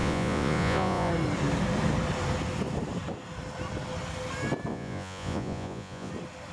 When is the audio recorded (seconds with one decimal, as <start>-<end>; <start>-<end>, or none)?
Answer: 1.1-4.7; 6.1-6.5